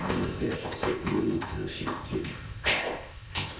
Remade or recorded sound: remade